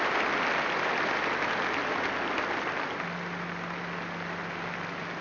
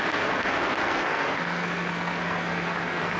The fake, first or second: second